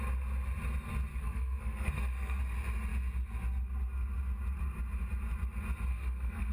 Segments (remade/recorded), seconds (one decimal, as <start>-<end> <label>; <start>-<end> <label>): 0.0-1.1 recorded; 1.1-2.4 remade; 2.4-5.9 recorded; 5.9-6.5 remade